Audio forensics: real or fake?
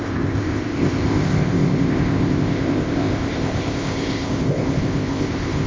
fake